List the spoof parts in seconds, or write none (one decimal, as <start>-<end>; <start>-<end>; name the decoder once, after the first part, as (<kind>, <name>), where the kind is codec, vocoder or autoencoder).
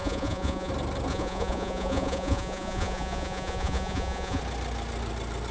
0.0-0.7 (vocoder, Vocos); 1.1-4.4